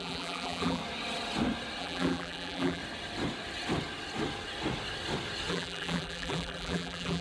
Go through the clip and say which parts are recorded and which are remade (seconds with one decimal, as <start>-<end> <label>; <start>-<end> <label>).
0.0-0.8 remade; 0.8-1.8 recorded; 1.8-2.8 remade; 2.8-5.5 recorded; 5.5-7.2 remade